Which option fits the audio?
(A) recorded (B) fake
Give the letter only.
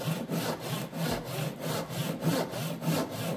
A